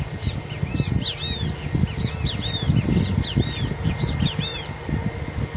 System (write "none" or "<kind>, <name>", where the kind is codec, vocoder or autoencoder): none